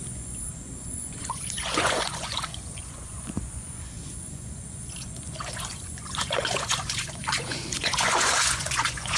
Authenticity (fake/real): fake